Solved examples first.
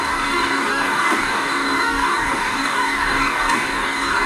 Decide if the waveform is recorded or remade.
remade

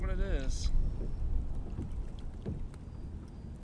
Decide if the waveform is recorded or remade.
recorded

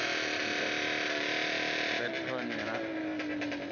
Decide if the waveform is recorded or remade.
recorded